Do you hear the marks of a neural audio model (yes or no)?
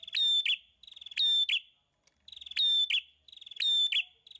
no